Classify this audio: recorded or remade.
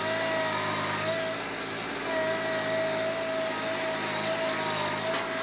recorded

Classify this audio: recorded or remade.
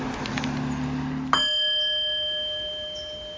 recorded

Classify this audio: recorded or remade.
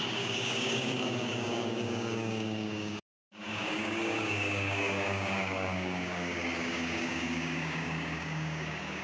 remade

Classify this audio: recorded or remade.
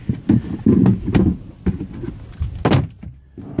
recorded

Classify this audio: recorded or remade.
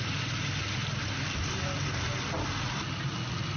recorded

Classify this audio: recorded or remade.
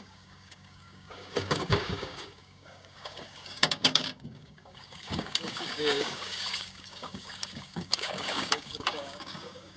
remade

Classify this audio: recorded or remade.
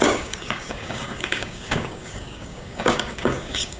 remade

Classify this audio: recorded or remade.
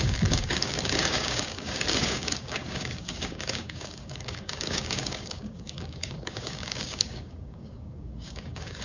remade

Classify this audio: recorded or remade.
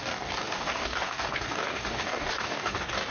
remade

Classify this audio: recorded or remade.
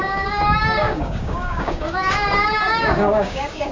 remade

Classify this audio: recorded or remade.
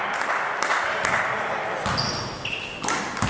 recorded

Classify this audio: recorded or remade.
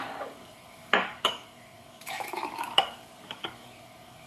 remade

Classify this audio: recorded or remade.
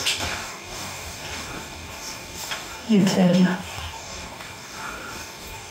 remade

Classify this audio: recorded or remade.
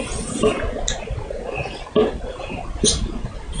recorded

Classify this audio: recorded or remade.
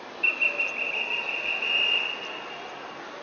recorded